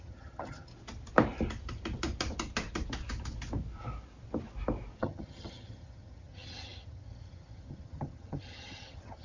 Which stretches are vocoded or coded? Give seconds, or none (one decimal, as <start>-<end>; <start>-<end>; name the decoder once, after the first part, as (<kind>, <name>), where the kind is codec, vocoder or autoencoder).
0.0-0.7 (vocoder, HiFi-GAN); 5.0-9.2